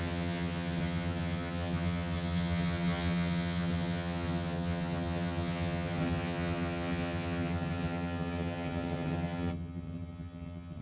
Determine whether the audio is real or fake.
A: fake